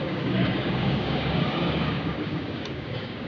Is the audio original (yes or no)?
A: no